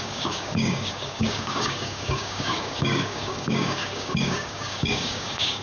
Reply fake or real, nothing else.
fake